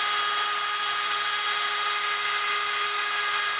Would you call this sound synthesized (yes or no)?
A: no